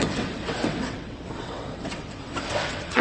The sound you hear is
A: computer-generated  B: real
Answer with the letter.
A